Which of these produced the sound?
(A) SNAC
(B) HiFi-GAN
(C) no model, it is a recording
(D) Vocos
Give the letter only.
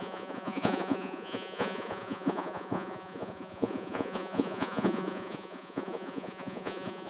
D